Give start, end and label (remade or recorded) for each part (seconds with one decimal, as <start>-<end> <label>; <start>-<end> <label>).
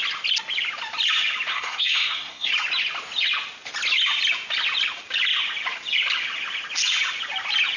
0.0-1.5 recorded; 1.5-2.5 remade; 2.5-7.8 recorded